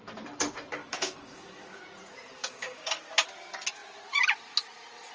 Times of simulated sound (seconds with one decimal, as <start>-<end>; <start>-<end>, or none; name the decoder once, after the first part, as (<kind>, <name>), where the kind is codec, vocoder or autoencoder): 0.8-1.8 (codec, DAC); 2.4-3.0